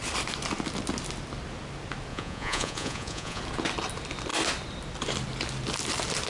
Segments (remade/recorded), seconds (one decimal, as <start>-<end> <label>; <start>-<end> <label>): 0.0-2.1 recorded; 2.1-3.4 remade; 3.4-6.3 recorded